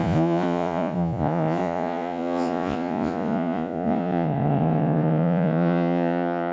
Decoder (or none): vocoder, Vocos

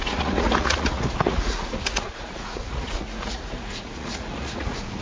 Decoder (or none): vocoder, Vocos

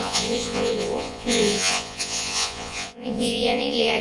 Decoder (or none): vocoder, Vocos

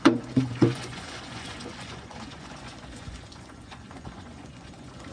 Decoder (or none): vocoder, Vocos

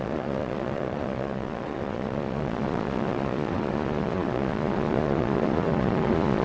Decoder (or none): vocoder, Vocos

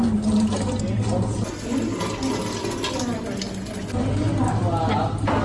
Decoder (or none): none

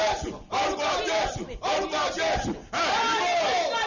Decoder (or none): none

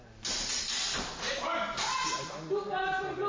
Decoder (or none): none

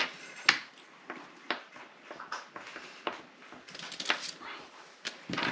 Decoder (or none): none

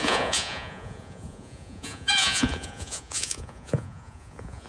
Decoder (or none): vocoder, Vocos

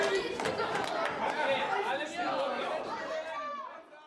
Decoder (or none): none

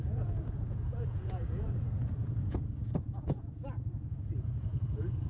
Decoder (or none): vocoder, Vocos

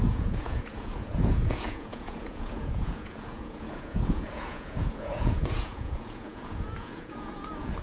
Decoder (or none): vocoder, Vocos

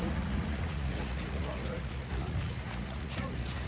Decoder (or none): vocoder, Vocos